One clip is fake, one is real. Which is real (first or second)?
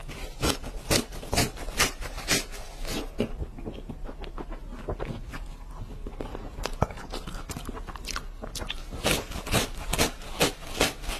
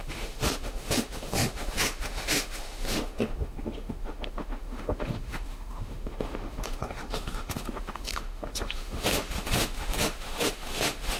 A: first